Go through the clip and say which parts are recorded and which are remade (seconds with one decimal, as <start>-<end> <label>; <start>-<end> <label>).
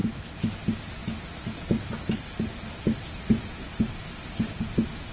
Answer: 0.0-0.5 remade; 0.5-5.1 recorded